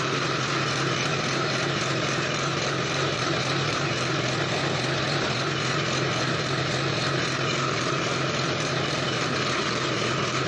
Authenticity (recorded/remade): remade